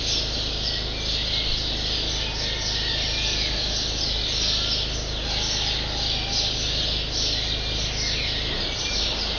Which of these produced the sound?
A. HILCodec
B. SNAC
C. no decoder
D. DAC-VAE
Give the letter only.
C